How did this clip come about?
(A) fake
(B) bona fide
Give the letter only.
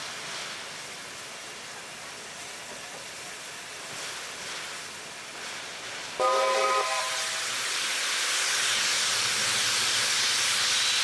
B